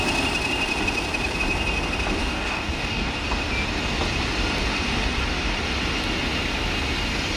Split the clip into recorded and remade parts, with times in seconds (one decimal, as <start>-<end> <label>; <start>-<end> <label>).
0.0-2.2 recorded; 2.2-3.1 remade; 3.1-7.4 recorded